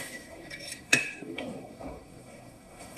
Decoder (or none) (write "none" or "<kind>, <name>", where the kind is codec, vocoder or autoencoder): codec, SNAC